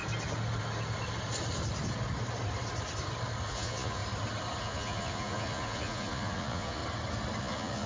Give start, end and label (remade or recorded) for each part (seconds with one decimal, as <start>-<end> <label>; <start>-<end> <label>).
0.0-3.5 recorded; 3.5-4.0 remade; 4.0-4.6 recorded; 4.6-6.8 remade; 6.8-7.4 recorded; 7.4-7.9 remade

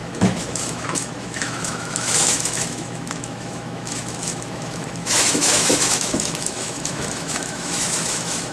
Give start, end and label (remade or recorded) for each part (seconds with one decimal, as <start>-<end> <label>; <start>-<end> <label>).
0.0-8.5 remade